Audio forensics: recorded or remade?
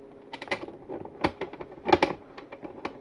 recorded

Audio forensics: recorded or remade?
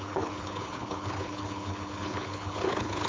remade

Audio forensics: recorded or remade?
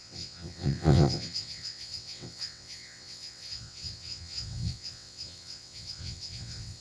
remade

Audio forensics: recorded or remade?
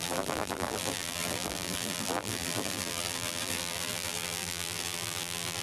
remade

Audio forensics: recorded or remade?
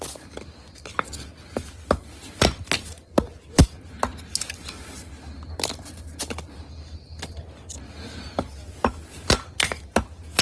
recorded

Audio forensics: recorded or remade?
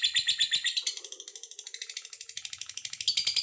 recorded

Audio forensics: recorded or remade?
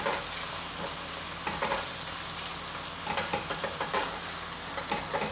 recorded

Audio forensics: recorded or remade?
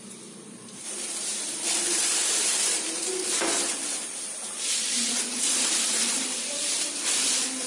remade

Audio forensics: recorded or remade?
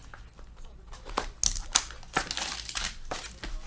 recorded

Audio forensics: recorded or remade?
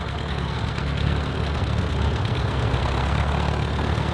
remade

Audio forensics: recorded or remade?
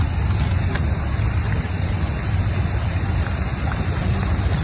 recorded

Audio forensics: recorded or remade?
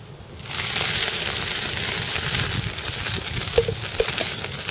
recorded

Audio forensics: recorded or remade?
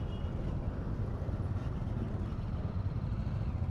recorded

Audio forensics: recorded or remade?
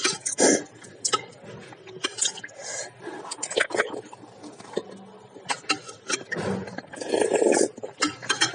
recorded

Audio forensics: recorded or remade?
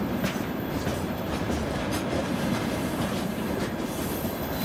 remade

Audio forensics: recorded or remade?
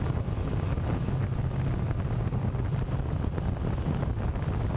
recorded